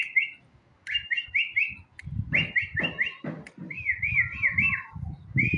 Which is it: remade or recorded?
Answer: recorded